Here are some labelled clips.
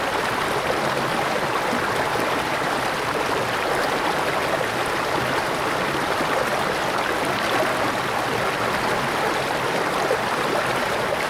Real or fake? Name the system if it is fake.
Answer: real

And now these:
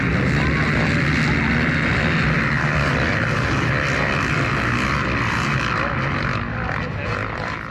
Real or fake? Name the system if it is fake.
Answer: real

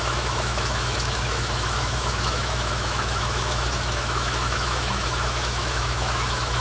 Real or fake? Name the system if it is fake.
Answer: fake, autoencoder, DAC-VAE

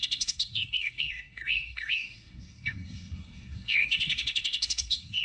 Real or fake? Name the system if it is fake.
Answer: fake, codec, SNAC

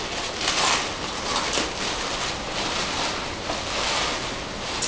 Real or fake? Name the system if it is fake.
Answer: real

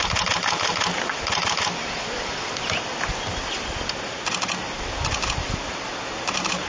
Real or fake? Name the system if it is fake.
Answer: real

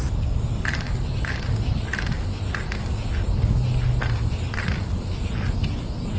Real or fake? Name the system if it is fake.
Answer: real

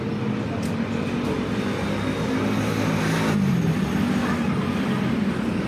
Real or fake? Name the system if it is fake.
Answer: real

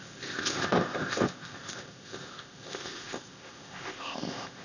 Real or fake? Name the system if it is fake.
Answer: fake, codec, ZipCodec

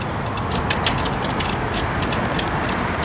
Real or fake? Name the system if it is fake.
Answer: real